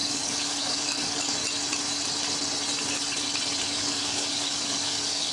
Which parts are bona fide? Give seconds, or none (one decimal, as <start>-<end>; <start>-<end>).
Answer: 1.4-3.6